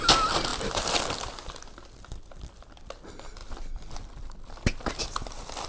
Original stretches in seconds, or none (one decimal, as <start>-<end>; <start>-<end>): 0.0-5.7